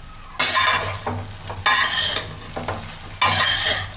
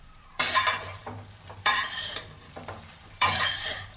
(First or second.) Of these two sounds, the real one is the first